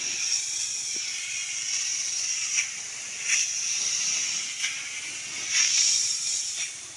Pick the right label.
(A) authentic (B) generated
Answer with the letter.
A